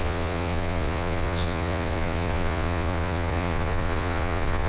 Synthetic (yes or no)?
yes